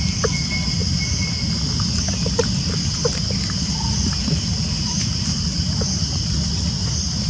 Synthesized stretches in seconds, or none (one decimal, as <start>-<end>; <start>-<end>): none